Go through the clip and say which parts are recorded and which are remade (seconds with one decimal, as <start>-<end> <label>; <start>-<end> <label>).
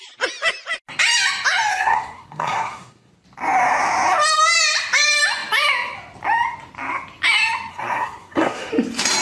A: 0.0-1.7 recorded; 1.7-3.1 remade; 3.1-7.7 recorded; 7.7-8.7 remade; 8.7-9.2 recorded